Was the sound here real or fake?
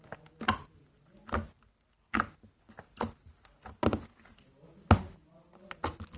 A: real